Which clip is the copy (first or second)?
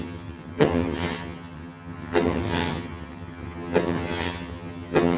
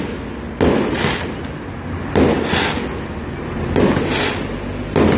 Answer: first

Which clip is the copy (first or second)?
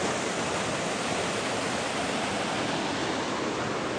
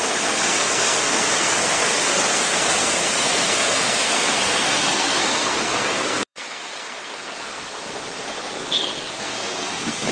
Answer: second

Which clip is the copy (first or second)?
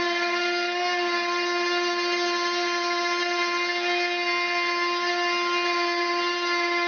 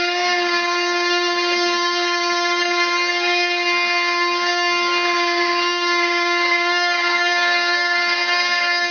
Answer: second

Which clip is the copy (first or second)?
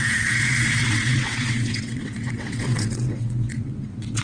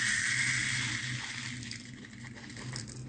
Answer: first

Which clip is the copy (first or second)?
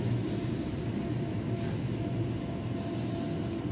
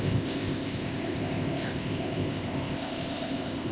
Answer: second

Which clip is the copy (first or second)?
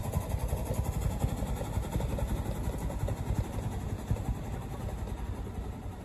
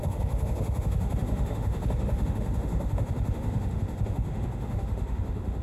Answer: second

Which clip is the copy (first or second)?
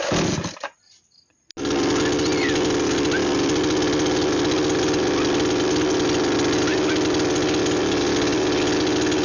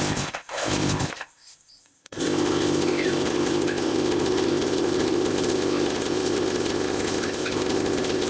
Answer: second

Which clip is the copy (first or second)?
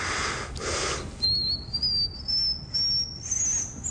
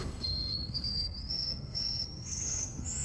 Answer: second